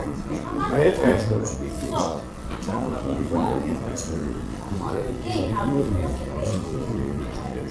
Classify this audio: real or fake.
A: fake